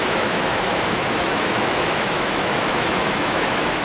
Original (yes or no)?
no